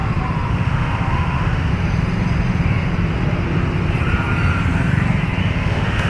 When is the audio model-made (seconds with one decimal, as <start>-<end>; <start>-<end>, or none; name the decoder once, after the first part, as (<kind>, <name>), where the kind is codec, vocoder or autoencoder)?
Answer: 0.5-1.7 (autoencoder, DAC-VAE); 5.4-6.1